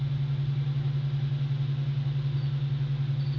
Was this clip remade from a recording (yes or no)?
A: no